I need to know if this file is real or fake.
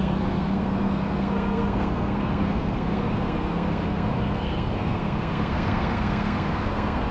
fake